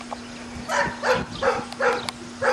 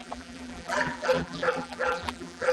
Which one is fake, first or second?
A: second